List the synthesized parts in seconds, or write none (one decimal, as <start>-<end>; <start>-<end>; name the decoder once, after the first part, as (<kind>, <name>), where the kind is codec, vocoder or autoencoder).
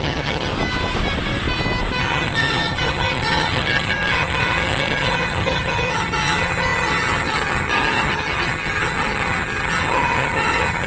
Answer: 0.0-0.5 (vocoder, HiFi-GAN); 2.0-10.9